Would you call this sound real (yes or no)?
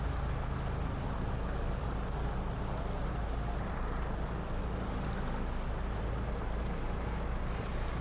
yes